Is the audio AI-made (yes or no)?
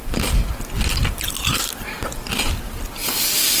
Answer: no